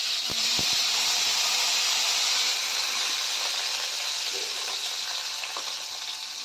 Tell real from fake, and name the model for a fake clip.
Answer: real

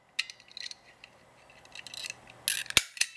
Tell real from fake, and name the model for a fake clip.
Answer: real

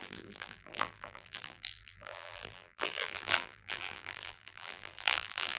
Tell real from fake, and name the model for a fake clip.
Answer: fake, vocoder, BigVGAN v2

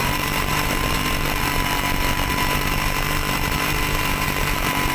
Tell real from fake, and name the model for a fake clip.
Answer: fake, vocoder, BigVGAN v2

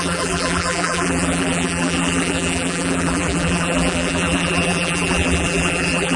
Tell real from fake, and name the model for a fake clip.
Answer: fake, vocoder, BigVGAN v2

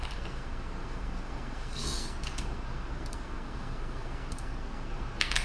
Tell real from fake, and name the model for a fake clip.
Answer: fake, codec, SNAC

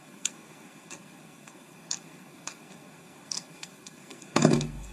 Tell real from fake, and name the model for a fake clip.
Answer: fake, codec, SNAC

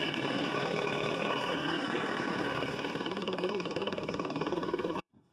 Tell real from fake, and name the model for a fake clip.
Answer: fake, codec, SNAC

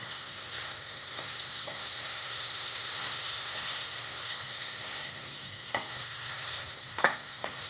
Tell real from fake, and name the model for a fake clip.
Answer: fake, codec, SNAC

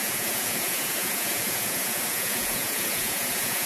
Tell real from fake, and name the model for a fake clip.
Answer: fake, vocoder, Vocos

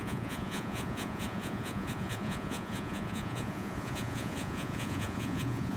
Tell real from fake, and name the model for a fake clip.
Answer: fake, vocoder, Vocos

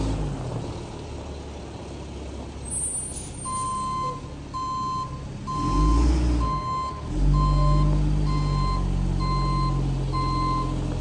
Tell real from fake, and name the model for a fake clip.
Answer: real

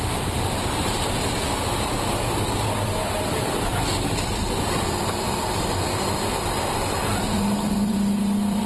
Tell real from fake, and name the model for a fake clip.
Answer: fake, vocoder, BigVGAN v2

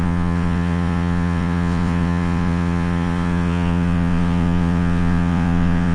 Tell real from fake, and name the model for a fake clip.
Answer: fake, vocoder, Vocos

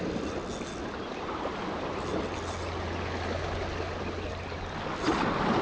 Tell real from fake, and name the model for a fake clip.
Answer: real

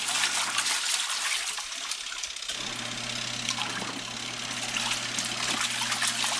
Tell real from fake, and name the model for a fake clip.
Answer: real